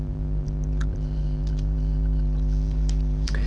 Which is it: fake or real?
fake